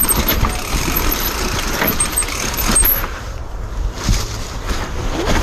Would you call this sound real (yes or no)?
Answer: no